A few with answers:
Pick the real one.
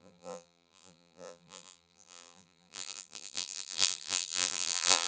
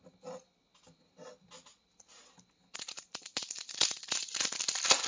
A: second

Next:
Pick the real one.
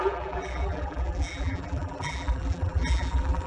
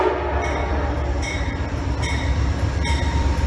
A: second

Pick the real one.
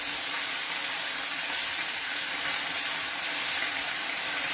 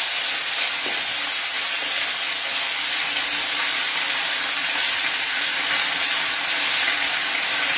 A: second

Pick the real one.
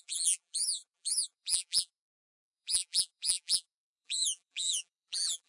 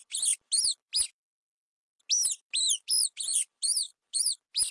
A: second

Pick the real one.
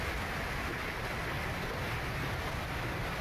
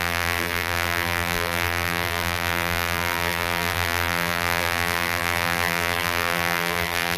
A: first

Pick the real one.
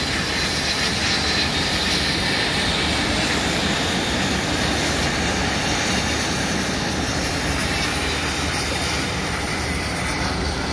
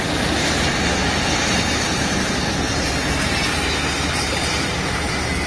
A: second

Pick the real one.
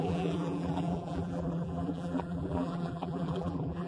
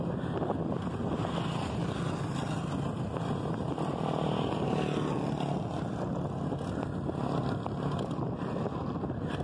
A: second